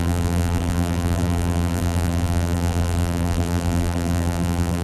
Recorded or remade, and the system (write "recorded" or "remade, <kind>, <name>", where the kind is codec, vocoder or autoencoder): remade, vocoder, BigVGAN v2